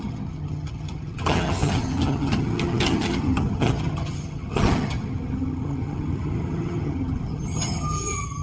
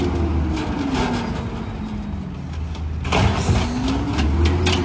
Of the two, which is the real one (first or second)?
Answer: second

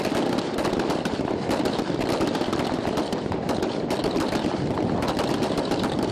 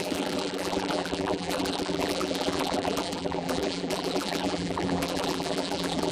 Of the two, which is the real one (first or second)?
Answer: first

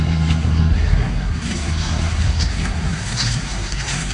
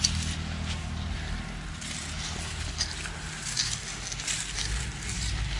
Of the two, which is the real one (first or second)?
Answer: second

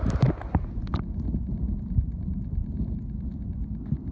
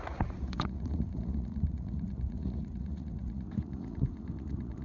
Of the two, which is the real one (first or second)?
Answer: first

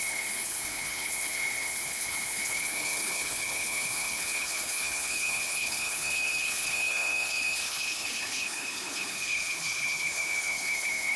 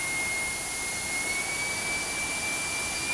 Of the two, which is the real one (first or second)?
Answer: second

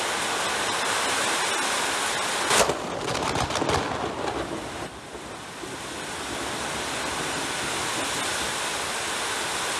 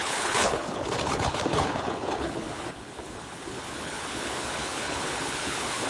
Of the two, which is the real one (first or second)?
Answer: first